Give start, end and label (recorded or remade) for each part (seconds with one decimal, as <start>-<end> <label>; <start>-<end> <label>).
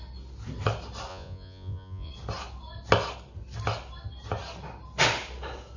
0.0-1.1 recorded; 1.1-2.1 remade; 2.1-5.8 recorded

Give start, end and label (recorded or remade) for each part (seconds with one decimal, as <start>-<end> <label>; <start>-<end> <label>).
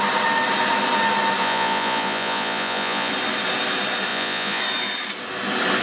0.0-1.4 recorded; 1.4-3.1 remade; 3.1-4.1 recorded; 4.1-4.6 remade; 4.6-5.8 recorded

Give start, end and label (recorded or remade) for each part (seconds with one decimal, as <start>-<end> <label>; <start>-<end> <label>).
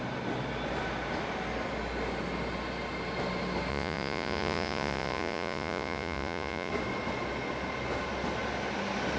0.0-3.7 recorded; 3.7-6.7 remade; 6.7-9.2 recorded